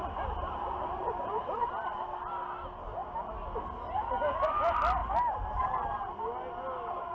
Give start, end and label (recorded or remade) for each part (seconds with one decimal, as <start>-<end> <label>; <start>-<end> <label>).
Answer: 0.0-1.7 remade; 1.7-5.0 recorded; 5.0-5.7 remade; 5.7-7.1 recorded